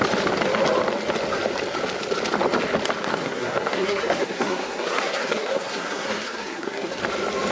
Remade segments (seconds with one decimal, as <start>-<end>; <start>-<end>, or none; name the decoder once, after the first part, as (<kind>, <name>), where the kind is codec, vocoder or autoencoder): 3.1-7.0 (codec, SNAC)